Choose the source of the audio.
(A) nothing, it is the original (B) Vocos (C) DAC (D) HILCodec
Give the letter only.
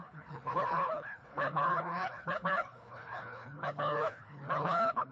D